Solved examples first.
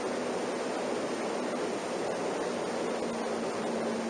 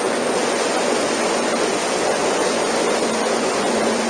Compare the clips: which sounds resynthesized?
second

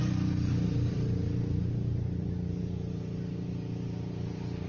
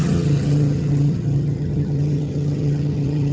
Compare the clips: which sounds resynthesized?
second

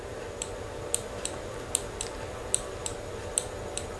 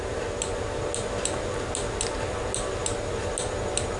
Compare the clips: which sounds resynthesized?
first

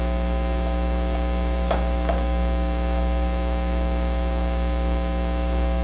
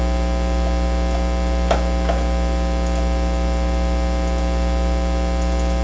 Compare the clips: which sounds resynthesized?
first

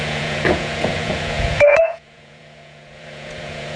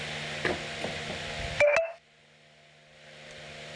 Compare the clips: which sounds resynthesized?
first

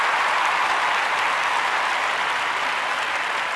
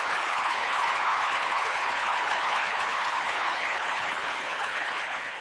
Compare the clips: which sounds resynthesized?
second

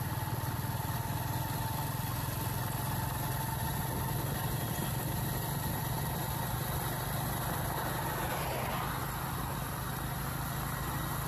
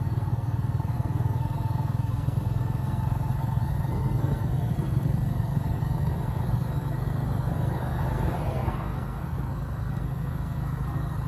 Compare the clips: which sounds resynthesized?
second